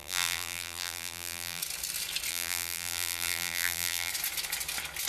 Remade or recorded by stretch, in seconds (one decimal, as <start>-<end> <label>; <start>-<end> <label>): 0.0-1.6 remade; 1.6-2.3 recorded; 2.3-4.1 remade; 4.1-5.1 recorded

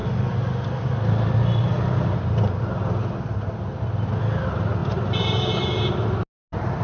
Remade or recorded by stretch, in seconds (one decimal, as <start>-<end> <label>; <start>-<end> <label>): 0.0-4.8 recorded; 4.8-5.5 remade; 5.5-6.8 recorded

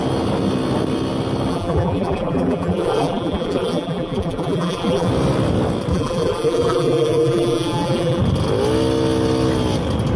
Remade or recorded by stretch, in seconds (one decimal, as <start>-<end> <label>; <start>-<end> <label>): 0.0-1.5 recorded; 1.5-5.1 remade; 5.1-5.9 recorded; 5.9-8.2 remade; 8.2-10.2 recorded

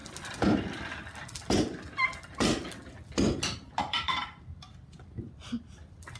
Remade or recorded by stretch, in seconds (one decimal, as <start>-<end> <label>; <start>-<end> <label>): 0.0-3.8 recorded; 3.8-4.4 remade; 4.4-6.2 recorded

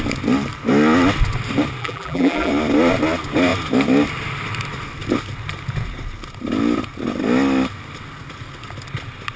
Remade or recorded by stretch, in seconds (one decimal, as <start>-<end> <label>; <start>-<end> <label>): 0.0-1.8 recorded; 1.8-2.5 remade; 2.5-9.4 recorded

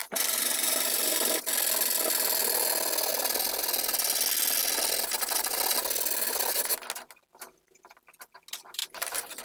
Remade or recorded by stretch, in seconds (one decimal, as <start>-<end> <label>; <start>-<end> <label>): 0.0-1.4 remade; 1.4-8.8 recorded; 8.8-9.4 remade

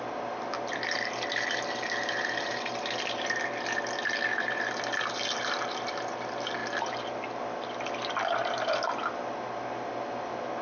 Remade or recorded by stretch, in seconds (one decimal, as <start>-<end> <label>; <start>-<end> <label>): 0.0-6.6 remade; 6.6-9.7 recorded; 9.7-10.6 remade

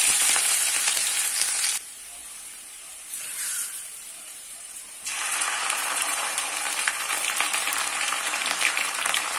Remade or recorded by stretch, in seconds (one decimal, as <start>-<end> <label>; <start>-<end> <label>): 0.0-9.4 remade